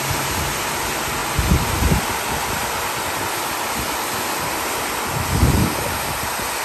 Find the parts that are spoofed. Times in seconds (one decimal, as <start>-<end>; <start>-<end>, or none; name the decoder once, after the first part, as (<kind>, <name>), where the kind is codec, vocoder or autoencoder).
none